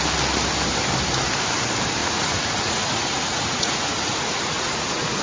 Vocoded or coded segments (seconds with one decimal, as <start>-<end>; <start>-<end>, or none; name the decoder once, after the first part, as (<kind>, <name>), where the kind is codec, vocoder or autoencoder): 2.0-5.2 (vocoder, Vocos)